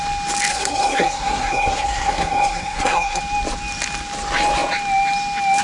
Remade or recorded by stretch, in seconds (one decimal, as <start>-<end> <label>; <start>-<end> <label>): 0.0-0.5 recorded; 0.5-3.2 remade; 3.2-5.6 recorded